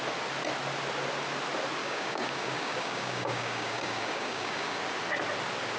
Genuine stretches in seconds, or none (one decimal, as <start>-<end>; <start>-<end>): 0.0-1.8; 4.8-5.8